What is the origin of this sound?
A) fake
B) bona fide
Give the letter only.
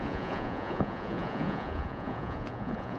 A